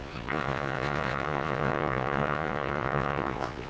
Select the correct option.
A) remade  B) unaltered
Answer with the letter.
A